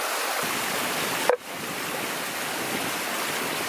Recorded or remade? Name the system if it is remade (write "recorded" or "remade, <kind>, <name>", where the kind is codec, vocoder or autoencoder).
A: recorded